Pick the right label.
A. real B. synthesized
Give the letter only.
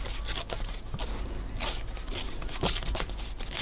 A